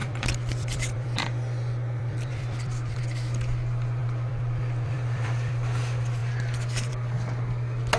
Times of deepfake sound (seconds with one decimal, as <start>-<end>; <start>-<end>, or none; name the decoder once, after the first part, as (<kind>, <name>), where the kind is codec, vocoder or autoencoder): 0.0-3.0 (vocoder, BigVGAN v2); 4.0-5.5